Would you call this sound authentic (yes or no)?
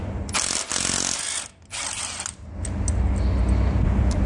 yes